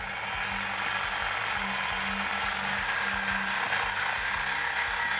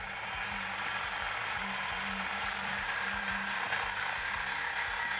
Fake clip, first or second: second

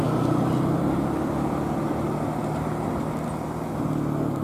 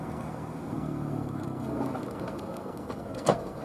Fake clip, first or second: second